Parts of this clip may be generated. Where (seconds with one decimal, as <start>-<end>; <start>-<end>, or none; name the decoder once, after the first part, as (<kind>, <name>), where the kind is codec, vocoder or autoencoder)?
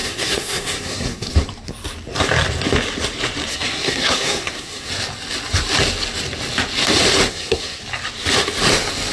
0.0-1.3 (codec, SNAC); 3.5-4.9; 7.3-7.8